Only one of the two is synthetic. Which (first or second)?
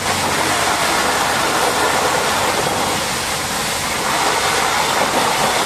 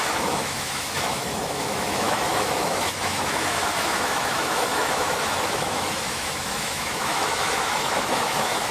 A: second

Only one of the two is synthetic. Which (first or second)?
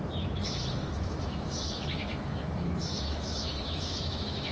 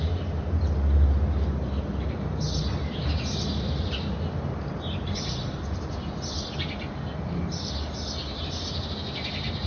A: first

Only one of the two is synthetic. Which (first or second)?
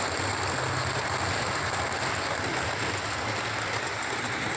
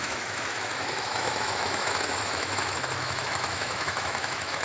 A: second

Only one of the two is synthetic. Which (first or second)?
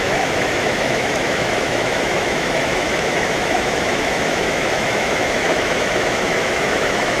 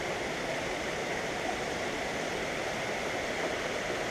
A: first